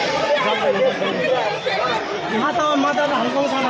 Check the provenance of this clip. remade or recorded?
remade